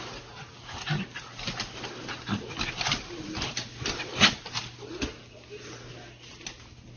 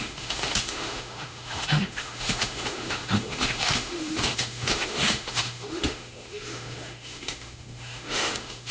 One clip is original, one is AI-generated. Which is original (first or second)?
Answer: first